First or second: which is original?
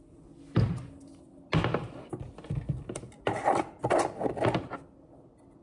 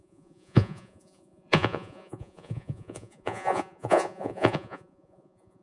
first